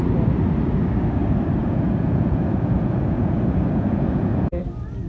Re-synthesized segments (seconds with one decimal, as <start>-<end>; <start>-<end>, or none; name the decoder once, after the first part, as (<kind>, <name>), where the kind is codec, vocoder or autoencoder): 1.6-4.6 (vocoder, Vocos)